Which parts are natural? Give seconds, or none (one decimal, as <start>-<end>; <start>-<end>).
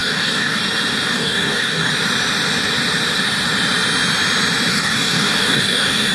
0.6-1.1; 1.9-4.7